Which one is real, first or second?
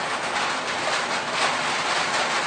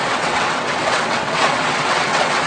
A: first